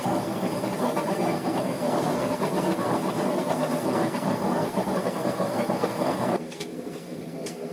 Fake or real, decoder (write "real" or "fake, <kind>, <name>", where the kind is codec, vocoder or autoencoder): fake, codec, SNAC